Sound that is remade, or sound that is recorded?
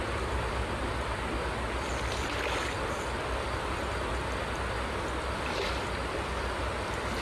recorded